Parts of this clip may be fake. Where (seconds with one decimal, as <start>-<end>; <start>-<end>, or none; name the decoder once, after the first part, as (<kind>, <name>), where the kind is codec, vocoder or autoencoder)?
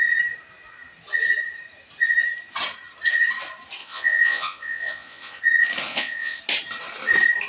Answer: 3.8-5.4 (vocoder, Vocos); 5.9-6.4